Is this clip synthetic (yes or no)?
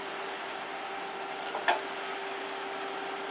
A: no